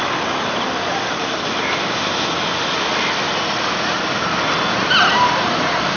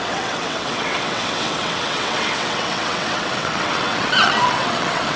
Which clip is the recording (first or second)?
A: first